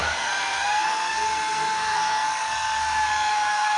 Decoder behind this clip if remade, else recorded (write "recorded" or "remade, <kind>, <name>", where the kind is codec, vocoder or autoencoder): remade, codec, SNAC